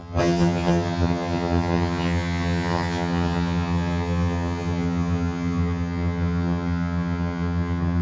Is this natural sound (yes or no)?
no